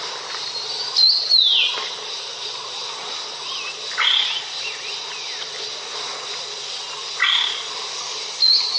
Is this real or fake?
real